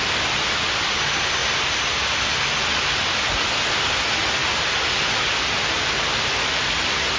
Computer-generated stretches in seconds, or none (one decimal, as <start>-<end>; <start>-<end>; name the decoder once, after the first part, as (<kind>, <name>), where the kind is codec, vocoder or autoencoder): none